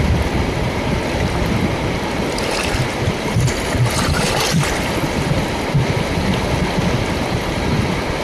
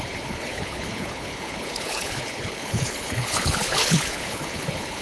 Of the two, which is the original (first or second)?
first